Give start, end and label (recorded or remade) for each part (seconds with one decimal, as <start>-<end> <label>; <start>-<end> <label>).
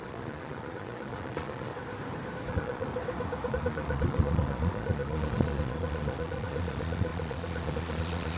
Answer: 0.0-1.7 remade; 1.7-2.5 recorded; 2.5-2.9 remade; 2.9-3.5 recorded; 3.5-8.4 remade